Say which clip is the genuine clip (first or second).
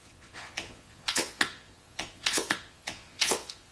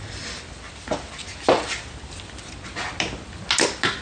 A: second